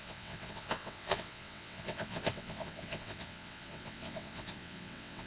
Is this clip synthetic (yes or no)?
yes